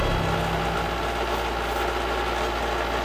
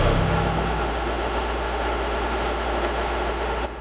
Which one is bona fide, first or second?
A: first